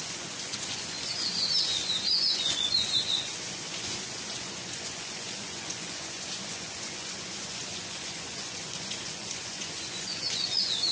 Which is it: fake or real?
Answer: fake